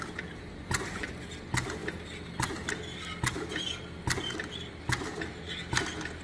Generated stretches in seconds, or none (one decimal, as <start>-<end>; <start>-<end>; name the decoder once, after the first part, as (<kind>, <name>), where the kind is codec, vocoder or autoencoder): 0.6-1.1 (vocoder, Vocos)